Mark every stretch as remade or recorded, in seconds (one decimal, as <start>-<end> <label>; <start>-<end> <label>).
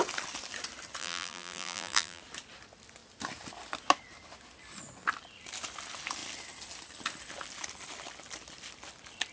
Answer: 0.0-1.0 recorded; 1.0-2.2 remade; 2.2-9.3 recorded